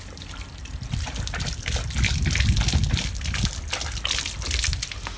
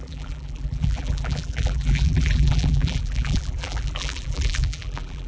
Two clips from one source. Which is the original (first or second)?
first